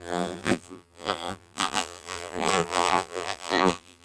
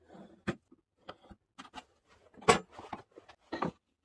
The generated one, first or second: first